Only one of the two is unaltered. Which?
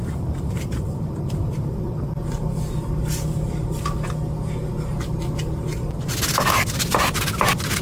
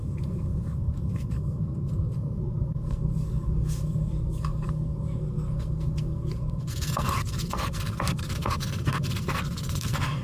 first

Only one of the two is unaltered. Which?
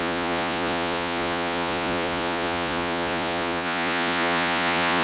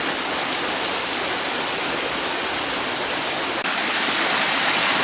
second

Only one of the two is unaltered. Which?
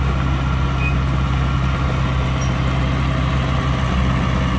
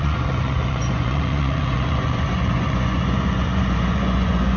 first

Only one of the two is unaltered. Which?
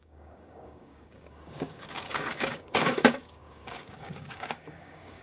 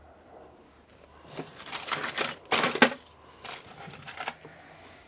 second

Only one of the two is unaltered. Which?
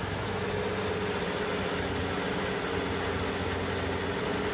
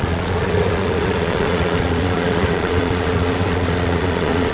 first